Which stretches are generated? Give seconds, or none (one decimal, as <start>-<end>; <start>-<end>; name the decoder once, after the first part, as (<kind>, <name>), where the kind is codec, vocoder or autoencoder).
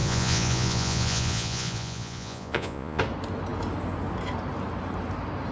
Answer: 0.0-3.0 (vocoder, Vocos)